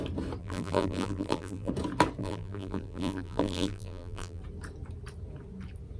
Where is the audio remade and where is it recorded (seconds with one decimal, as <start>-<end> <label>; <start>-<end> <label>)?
0.0-0.4 recorded; 0.4-1.7 remade; 1.7-2.2 recorded; 2.2-4.4 remade; 4.4-6.0 recorded